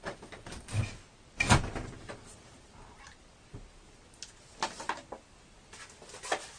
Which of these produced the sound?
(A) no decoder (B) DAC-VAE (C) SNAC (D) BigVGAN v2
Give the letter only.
A